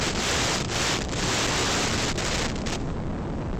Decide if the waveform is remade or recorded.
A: recorded